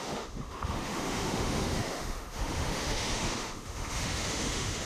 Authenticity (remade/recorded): remade